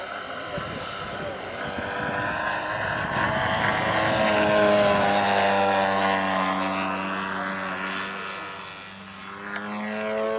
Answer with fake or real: real